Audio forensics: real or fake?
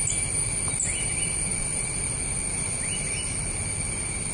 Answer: real